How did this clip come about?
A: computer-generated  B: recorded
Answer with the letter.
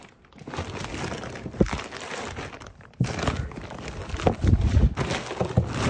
B